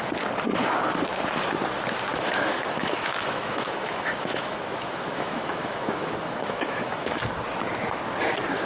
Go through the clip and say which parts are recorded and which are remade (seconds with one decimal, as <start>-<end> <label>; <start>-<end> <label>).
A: 0.0-2.1 recorded; 2.1-7.2 remade; 7.2-8.7 recorded